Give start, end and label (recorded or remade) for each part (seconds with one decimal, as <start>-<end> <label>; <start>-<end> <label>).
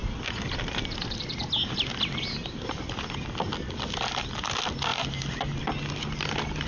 0.0-6.7 recorded